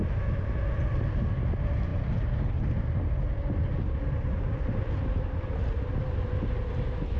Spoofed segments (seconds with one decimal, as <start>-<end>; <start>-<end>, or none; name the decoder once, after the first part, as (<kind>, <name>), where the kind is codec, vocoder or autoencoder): none